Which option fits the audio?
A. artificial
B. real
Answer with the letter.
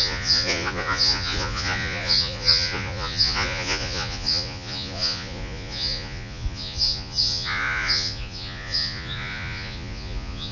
A